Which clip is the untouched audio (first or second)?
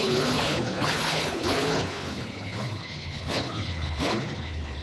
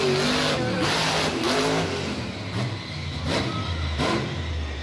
second